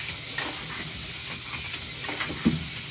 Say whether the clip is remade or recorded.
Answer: recorded